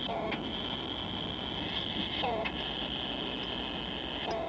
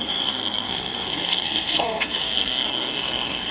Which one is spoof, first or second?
second